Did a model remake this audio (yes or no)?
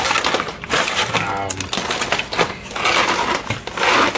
no